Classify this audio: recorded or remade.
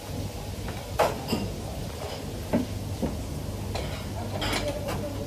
recorded